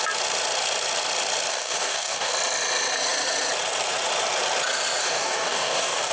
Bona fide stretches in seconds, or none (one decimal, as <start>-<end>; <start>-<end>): 0.0-1.5; 2.3-5.0

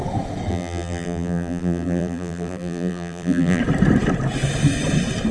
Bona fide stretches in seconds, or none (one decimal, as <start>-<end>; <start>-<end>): 0.0-0.5; 3.6-5.3

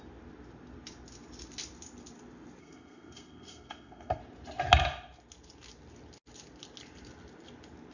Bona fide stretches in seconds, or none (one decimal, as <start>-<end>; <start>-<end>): 0.0-2.6; 4.2-7.9